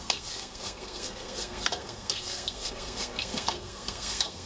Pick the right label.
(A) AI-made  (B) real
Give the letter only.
A